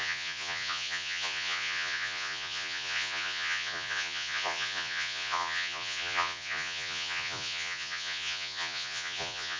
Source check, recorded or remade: remade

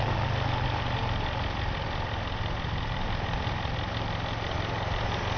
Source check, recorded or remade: recorded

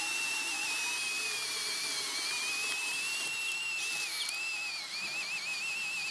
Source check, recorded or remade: recorded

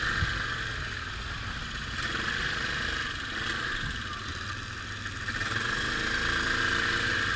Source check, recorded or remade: recorded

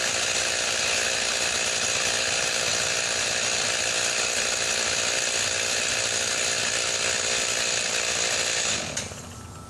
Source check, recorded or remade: recorded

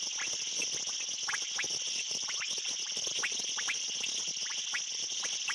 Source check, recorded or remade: recorded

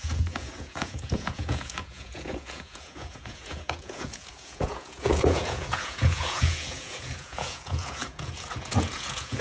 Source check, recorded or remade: remade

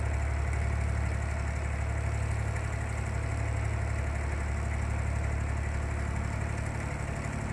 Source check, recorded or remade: recorded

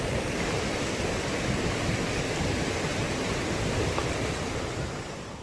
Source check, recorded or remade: recorded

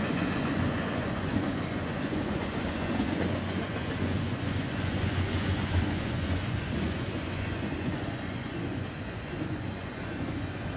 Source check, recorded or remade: remade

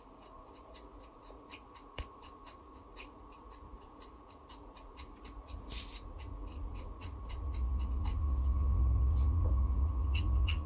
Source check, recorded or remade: remade